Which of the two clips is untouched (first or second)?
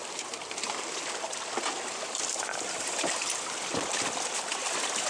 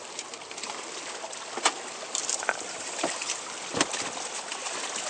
second